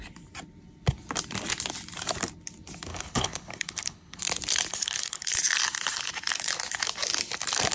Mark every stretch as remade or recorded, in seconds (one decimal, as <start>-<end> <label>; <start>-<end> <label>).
0.0-2.9 recorded; 2.9-4.2 remade; 4.2-4.7 recorded; 4.7-5.3 remade; 5.3-7.7 recorded